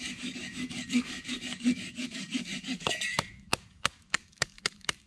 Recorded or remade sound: remade